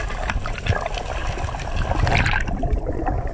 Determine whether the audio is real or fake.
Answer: real